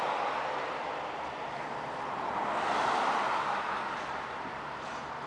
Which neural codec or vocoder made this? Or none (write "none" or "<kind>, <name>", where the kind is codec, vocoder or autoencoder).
none